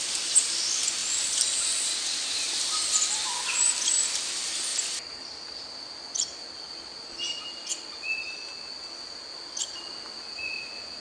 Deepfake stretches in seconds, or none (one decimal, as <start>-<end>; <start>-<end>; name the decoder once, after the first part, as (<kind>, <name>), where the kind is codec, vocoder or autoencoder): none